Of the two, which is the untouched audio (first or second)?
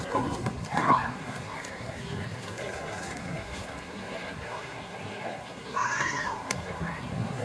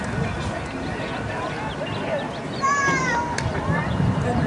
second